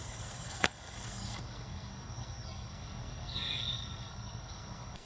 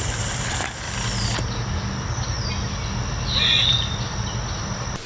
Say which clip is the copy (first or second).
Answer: first